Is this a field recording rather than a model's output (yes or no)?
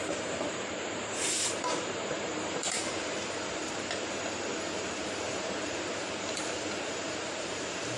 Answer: no